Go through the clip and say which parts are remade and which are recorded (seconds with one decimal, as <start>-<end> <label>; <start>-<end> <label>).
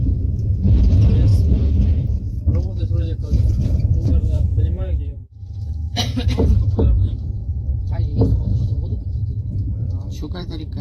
0.0-1.3 remade; 1.3-2.0 recorded; 2.0-8.1 remade; 8.1-8.6 recorded; 8.6-10.8 remade